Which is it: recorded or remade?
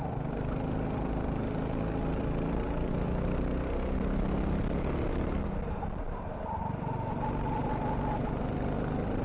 recorded